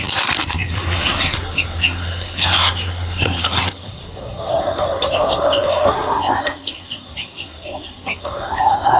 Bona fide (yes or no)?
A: no